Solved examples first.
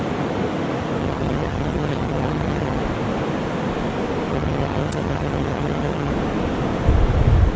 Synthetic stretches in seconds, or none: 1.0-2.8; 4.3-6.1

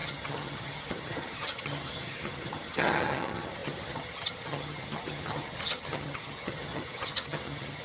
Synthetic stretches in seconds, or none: 0.0-7.8